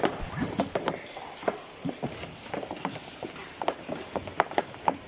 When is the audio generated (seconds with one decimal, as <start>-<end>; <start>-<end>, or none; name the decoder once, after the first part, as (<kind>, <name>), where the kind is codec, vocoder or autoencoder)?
none